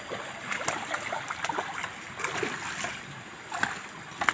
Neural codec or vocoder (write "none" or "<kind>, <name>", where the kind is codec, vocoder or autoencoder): none